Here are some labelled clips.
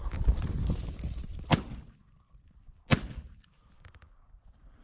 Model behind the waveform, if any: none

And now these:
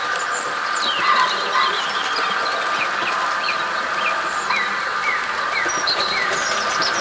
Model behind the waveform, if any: none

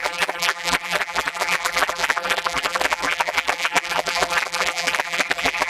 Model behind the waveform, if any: vocoder, BigVGAN v2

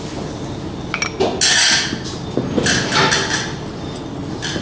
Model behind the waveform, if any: none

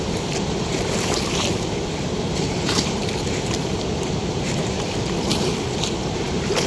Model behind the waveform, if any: vocoder, BigVGAN v2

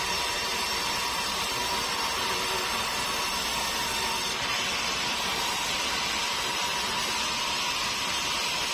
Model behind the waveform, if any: none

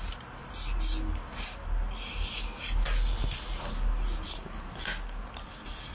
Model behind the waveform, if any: none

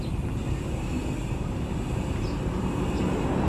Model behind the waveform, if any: none